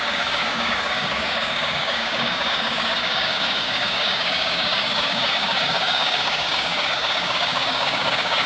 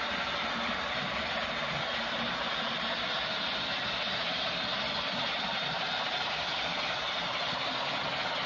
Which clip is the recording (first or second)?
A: second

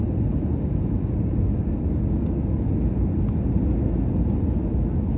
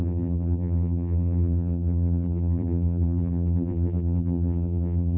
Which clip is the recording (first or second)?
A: first